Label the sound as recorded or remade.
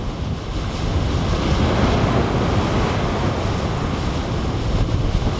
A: recorded